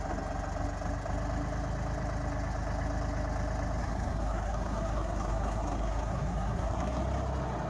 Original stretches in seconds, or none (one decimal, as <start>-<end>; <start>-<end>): 0.0-3.8; 7.0-7.7